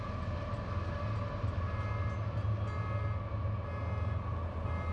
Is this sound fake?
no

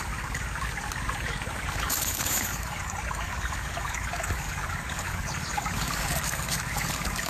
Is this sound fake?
yes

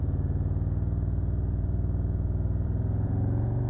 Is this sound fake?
yes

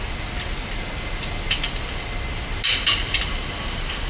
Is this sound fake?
no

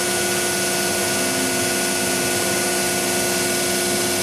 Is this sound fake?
no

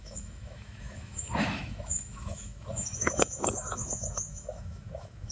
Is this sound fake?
yes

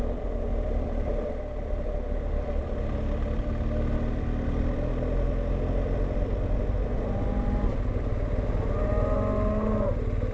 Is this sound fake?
no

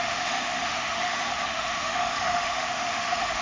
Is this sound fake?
yes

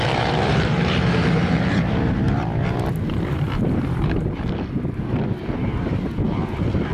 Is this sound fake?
yes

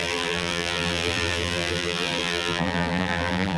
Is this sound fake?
yes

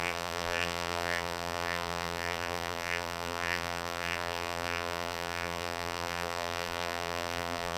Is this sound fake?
yes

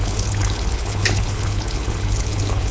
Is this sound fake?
yes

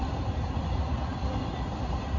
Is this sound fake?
no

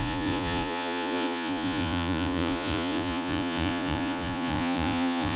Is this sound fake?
yes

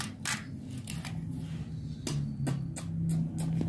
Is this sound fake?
no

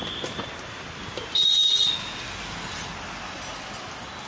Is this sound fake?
no